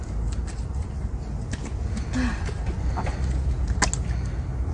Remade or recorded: recorded